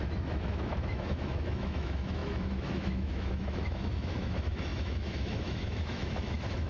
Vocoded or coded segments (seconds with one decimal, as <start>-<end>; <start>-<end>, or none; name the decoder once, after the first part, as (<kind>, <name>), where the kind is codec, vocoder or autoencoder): 0.0-6.7 (autoencoder, DAC-VAE)